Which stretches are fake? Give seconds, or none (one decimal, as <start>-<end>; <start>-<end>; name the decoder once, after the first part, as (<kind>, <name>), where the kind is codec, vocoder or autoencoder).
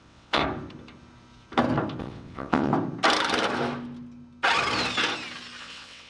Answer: 0.0-0.4 (vocoder, WaveNeXt); 2.0-2.7; 5.6-6.1